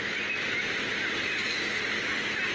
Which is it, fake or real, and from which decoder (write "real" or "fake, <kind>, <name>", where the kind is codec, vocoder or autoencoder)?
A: real